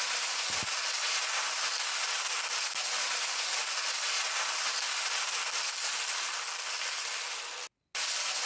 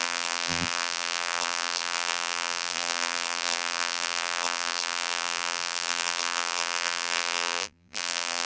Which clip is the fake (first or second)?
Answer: second